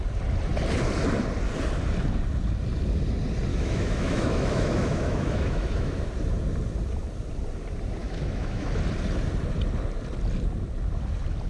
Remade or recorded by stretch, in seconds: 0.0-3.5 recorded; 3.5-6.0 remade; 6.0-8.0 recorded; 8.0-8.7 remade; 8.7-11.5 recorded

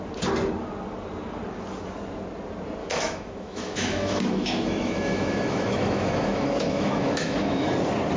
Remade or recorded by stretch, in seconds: 0.0-2.8 recorded; 2.8-7.7 remade; 7.7-8.2 recorded

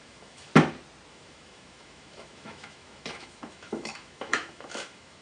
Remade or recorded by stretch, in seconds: 0.0-0.5 remade; 0.5-1.1 recorded; 1.1-5.2 remade

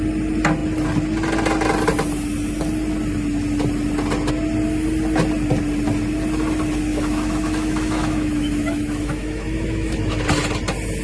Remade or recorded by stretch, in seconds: 0.0-6.9 recorded; 6.9-10.2 remade; 10.2-11.0 recorded